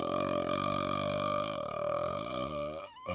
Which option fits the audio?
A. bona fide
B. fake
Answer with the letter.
B